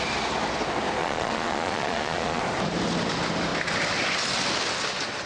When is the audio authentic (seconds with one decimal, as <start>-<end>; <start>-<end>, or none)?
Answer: 0.0-1.0; 2.4-5.3